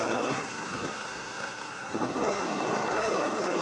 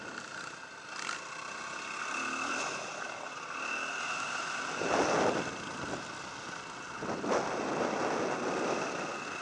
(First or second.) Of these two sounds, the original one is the second